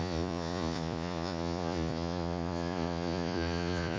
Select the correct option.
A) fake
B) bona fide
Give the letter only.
A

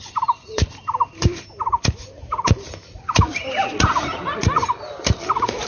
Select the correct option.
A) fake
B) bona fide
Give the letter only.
B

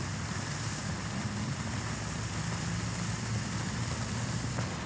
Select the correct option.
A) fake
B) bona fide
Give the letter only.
B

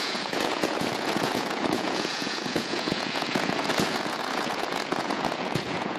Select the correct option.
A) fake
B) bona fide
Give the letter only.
A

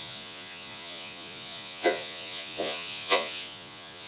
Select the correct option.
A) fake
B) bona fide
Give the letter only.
A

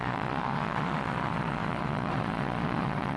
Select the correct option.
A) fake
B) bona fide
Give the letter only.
A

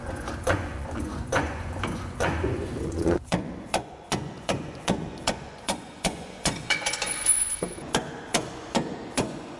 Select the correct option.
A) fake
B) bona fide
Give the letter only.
A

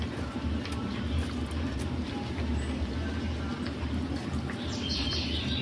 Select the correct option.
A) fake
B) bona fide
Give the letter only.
B